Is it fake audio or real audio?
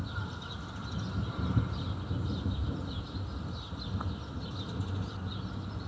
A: real